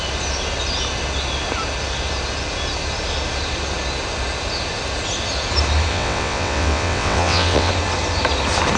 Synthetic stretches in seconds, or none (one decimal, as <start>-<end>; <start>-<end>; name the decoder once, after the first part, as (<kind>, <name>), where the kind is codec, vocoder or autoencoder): 5.9-7.7 (vocoder, WaveNeXt)